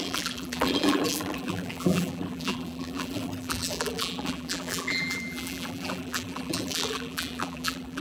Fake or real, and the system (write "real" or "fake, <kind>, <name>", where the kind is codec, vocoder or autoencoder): fake, vocoder, BigVGAN v2